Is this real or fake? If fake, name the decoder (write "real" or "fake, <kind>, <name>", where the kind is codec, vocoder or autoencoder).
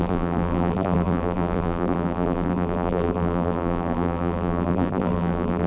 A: fake, vocoder, BigVGAN v2